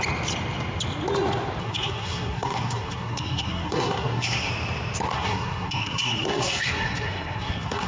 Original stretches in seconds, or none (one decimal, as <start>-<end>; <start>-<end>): 0.0-1.6; 4.5-5.1